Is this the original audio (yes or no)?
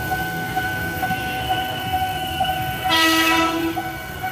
no